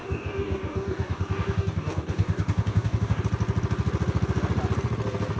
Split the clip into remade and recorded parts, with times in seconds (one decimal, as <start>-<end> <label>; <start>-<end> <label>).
0.0-3.2 remade; 3.2-5.4 recorded